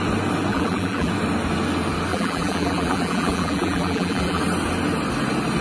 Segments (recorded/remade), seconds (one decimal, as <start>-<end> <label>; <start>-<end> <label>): 0.0-0.5 recorded; 0.5-1.1 remade; 1.1-2.1 recorded; 2.1-4.4 remade; 4.4-5.6 recorded